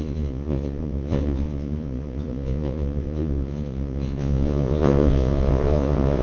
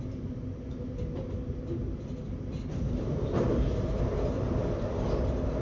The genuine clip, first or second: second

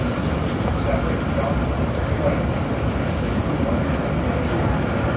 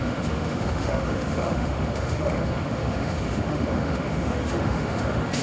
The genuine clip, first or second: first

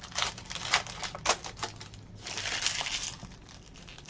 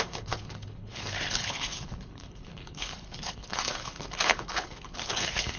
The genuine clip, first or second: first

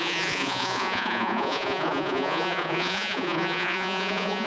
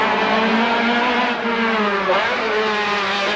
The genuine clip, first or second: second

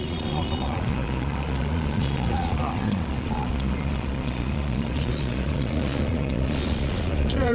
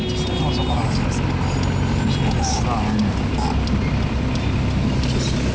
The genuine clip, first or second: second